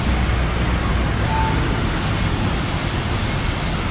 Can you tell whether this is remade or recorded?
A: recorded